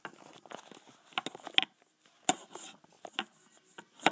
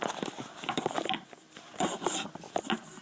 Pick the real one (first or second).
first